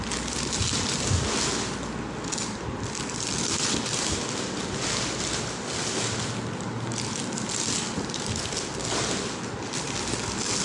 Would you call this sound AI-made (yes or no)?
no